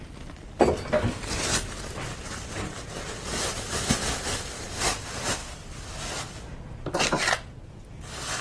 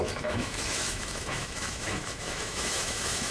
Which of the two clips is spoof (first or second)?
second